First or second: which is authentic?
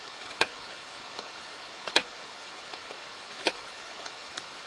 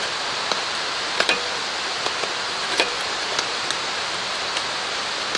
second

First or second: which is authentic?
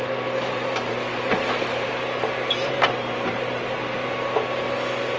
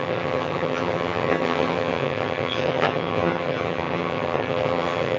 first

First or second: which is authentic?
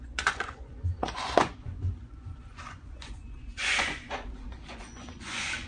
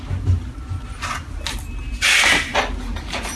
second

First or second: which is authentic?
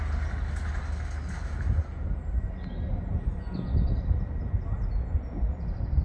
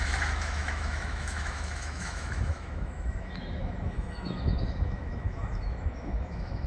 first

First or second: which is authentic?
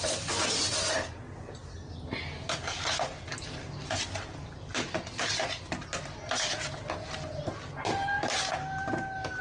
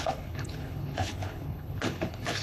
first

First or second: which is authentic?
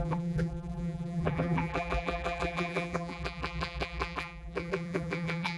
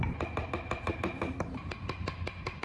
second